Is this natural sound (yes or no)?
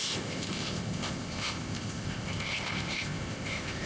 no